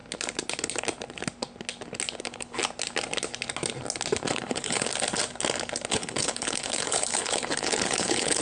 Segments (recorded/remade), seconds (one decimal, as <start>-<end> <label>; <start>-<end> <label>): 0.0-2.2 recorded; 2.2-2.6 remade; 2.6-4.3 recorded; 4.3-4.9 remade; 4.9-5.9 recorded; 5.9-8.4 remade